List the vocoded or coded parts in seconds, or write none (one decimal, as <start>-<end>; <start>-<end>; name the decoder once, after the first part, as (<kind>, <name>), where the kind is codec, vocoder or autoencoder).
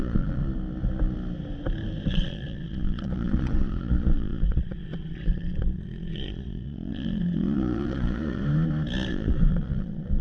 0.0-0.4 (vocoder, Vocos); 2.1-8.4; 9.1-10.2